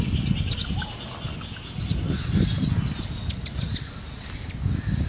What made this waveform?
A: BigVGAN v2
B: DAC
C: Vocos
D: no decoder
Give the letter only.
D